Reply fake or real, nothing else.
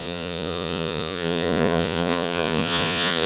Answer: fake